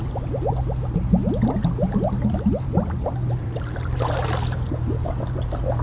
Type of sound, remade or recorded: recorded